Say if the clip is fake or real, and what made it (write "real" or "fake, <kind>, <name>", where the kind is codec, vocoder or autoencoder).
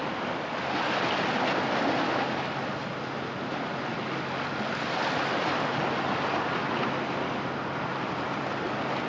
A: real